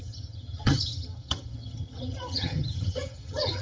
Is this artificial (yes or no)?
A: yes